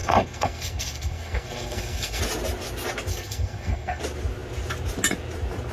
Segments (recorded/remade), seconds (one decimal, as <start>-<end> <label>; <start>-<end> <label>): 0.0-2.2 remade; 2.2-3.1 recorded; 3.1-4.0 remade; 4.0-5.7 recorded